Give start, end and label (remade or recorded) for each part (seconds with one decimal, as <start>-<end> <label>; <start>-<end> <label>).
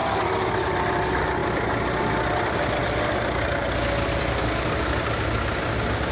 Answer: 0.0-6.1 recorded